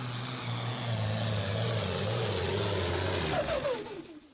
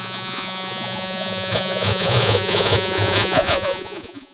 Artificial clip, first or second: second